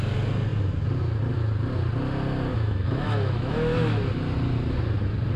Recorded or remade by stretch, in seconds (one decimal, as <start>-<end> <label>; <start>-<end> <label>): 0.0-2.5 recorded; 2.5-4.0 remade; 4.0-5.4 recorded